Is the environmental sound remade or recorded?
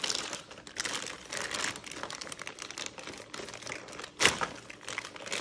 recorded